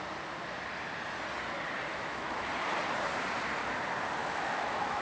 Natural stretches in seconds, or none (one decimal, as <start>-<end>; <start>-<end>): 0.0-1.9; 2.5-4.2